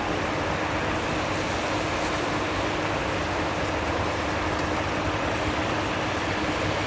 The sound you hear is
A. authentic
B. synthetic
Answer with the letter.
A